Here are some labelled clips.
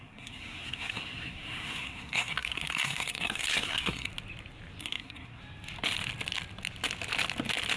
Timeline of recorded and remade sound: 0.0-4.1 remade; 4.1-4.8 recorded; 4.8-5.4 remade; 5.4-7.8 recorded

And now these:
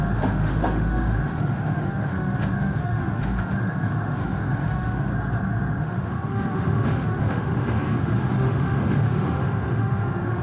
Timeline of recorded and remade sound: 0.0-5.1 remade; 5.1-5.8 recorded; 5.8-10.4 remade

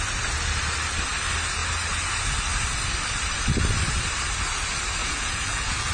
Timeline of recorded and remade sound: 0.0-5.0 recorded; 5.0-5.9 remade

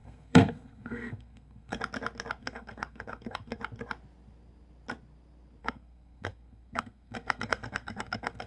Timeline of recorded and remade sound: 0.0-1.8 remade; 1.8-2.4 recorded; 2.4-3.6 remade; 3.6-5.6 recorded; 5.6-8.5 remade